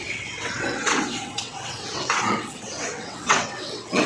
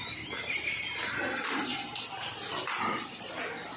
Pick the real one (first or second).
second